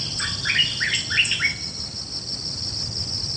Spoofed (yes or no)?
no